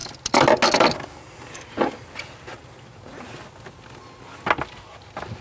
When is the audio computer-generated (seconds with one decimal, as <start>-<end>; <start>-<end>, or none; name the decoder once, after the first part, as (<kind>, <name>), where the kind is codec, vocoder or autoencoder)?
none